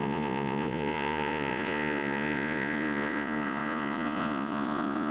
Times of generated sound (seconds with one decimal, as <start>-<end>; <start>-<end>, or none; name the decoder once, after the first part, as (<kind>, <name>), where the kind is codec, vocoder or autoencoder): 0.0-5.1 (vocoder, Vocos)